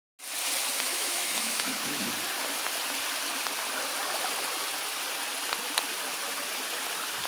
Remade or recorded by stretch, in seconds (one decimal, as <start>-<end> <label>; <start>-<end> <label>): 0.0-0.9 recorded; 0.9-2.1 remade; 2.1-7.3 recorded